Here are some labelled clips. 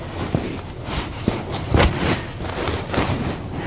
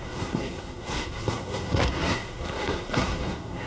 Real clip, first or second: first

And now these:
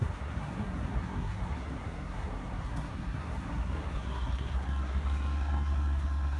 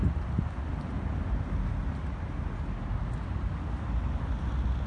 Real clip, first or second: second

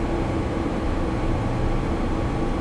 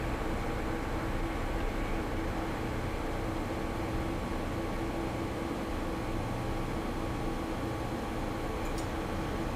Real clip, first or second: second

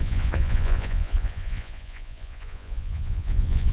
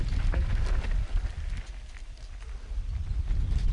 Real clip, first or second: second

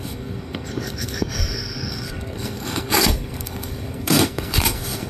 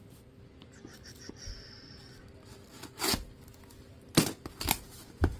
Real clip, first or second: second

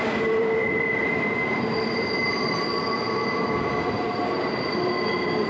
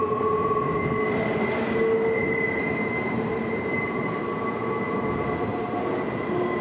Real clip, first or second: second